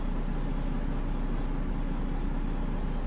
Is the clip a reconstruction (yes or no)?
no